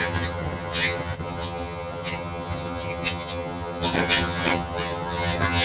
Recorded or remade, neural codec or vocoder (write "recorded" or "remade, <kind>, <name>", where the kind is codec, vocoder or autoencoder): remade, vocoder, HiFi-GAN